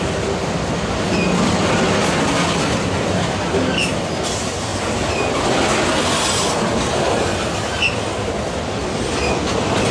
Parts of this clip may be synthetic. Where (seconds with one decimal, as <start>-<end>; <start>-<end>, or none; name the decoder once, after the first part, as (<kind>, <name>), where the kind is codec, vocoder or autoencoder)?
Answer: none